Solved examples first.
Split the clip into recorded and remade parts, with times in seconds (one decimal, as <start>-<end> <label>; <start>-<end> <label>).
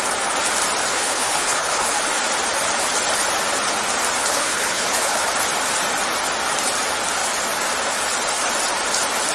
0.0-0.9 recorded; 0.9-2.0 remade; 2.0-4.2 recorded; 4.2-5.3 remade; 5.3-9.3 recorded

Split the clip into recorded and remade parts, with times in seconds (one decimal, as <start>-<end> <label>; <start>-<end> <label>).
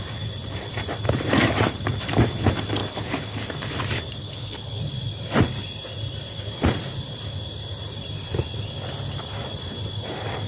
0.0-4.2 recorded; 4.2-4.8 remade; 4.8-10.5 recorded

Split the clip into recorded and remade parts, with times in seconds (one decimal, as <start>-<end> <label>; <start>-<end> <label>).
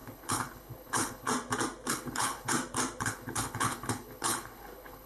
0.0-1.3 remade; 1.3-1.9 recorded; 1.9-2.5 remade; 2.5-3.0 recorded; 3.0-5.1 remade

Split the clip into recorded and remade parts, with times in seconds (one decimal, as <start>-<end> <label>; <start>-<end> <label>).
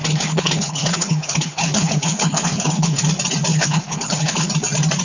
0.0-3.0 remade; 3.0-3.5 recorded; 3.5-4.5 remade; 4.5-5.0 recorded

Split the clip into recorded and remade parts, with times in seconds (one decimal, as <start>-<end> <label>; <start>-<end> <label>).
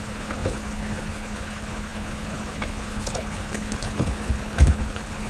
0.0-5.3 remade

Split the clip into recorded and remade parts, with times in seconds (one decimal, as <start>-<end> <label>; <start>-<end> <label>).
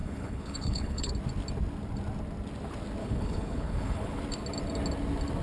0.0-1.1 remade; 1.1-3.0 recorded; 3.0-4.2 remade; 4.2-5.4 recorded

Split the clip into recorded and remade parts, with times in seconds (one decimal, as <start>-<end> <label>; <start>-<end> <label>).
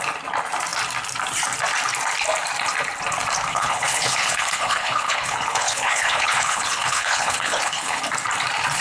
0.0-3.5 recorded; 3.5-8.0 remade; 8.0-8.8 recorded